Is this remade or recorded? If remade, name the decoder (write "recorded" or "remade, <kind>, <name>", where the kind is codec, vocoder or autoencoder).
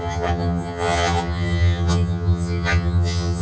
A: remade, vocoder, HiFi-GAN